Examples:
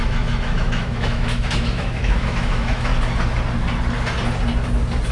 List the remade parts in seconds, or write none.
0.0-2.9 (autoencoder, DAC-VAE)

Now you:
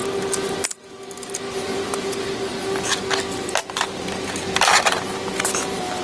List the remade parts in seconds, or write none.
none

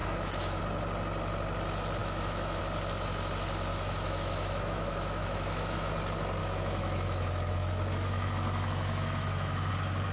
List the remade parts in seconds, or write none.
0.0-0.6 (autoencoder, DAC-VAE); 2.0-2.6; 3.7-5.9; 6.4-9.7

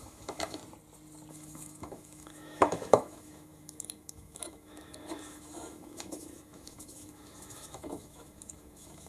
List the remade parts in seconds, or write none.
0.0-0.6 (autoencoder, DAC-VAE); 1.3-9.1

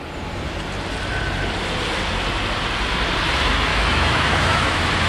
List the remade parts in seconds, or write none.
3.7-5.1 (autoencoder, DAC-VAE)

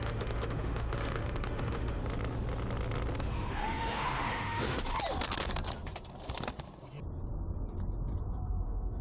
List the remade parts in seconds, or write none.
0.0-2.0 (autoencoder, DAC-VAE); 3.2-4.9; 8.2-9.0

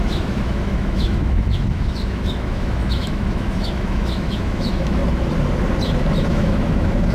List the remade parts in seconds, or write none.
0.0-5.0 (autoencoder, DAC-VAE); 6.3-7.1

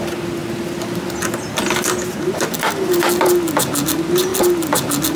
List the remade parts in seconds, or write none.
none